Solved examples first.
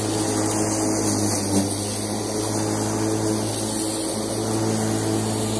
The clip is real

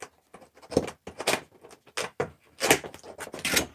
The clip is real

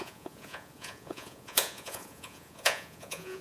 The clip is fake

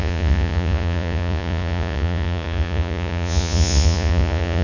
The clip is fake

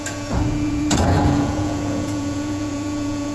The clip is fake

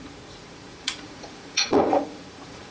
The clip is fake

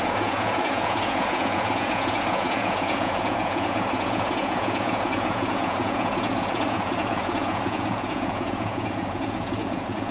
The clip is fake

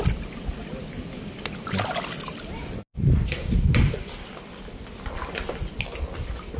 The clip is real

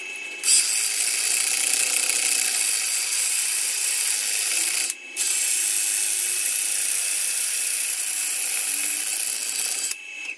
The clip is real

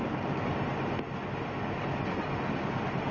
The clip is real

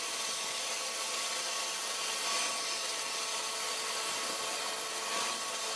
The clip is real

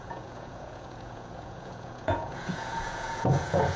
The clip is fake